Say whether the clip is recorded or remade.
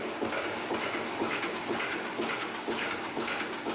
remade